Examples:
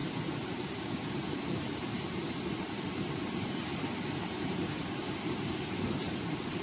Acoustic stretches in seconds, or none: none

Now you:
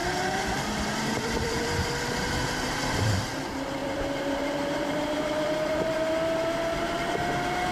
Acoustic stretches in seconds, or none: 1.9-3.8; 6.1-7.7

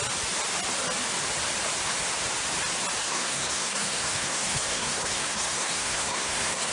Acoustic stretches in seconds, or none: 0.0-3.0

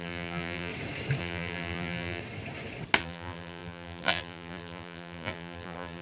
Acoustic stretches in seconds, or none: 0.7-1.2; 2.2-3.0